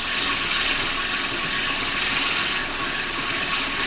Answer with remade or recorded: recorded